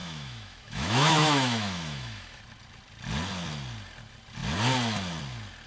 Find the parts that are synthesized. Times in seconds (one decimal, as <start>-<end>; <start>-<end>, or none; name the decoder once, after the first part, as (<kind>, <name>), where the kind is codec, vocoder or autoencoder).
0.0-2.4 (autoencoder, DAC-VAE)